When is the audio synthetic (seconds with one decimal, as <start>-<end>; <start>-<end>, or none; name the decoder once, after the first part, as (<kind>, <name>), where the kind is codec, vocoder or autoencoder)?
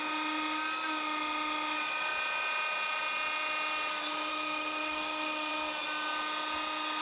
4.3-5.5 (codec, DAC)